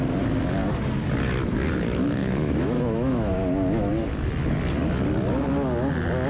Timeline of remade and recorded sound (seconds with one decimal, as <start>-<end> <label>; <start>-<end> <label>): 0.0-2.2 recorded; 2.2-3.3 remade; 3.3-6.3 recorded